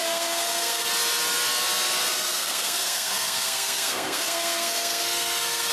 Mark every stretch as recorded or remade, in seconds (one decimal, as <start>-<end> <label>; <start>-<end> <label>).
0.0-0.9 remade; 0.9-2.1 recorded; 2.1-5.7 remade